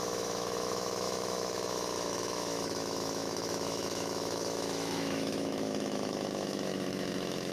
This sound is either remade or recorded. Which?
remade